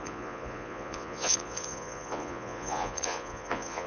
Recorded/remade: remade